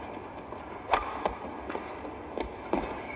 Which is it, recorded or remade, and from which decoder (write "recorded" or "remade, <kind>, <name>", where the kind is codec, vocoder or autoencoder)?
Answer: recorded